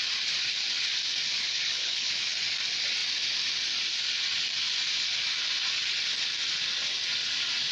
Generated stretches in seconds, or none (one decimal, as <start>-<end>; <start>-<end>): 1.4-2.1